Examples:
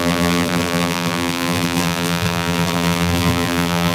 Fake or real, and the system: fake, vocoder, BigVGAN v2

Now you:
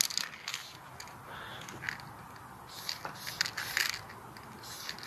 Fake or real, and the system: real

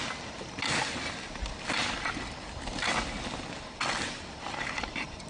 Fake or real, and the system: real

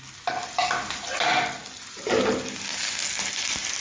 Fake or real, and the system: real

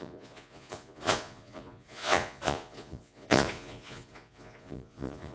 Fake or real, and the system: fake, vocoder, Vocos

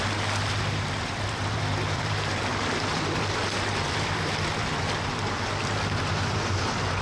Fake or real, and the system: fake, vocoder, BigVGAN v2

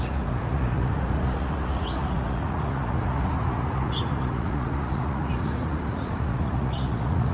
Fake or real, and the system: fake, vocoder, Vocos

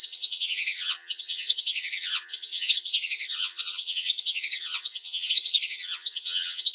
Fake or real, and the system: fake, vocoder, HiFi-GAN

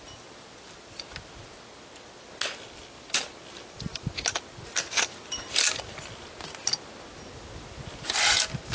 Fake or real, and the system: real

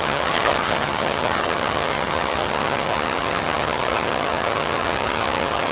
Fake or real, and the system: fake, vocoder, HiFi-GAN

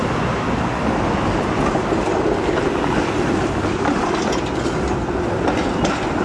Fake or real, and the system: real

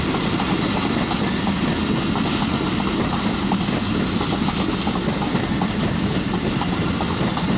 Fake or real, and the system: real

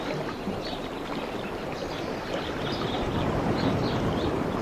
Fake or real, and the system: fake, vocoder, BigVGAN v2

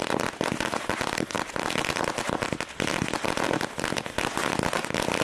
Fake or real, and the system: real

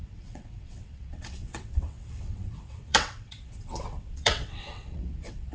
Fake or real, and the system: fake, vocoder, WaveNeXt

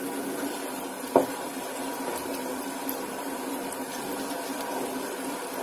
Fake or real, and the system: real